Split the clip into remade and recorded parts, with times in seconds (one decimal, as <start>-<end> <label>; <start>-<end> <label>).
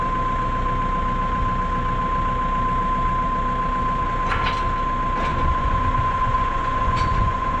0.0-5.3 recorded; 5.3-7.6 remade